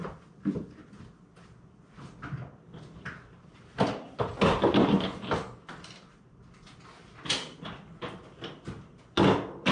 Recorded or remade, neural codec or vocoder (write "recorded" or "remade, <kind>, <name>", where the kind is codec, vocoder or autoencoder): recorded